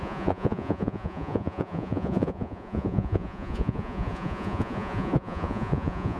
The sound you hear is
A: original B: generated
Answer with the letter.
B